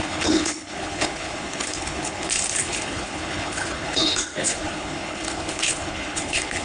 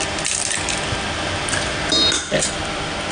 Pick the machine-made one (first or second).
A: first